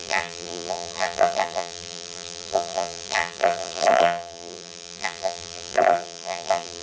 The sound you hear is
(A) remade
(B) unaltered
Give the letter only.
A